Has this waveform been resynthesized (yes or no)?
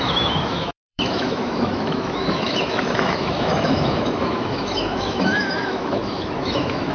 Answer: yes